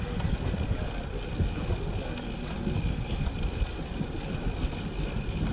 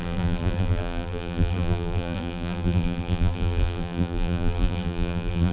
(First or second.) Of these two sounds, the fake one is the second